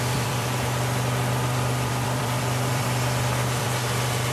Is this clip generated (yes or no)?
yes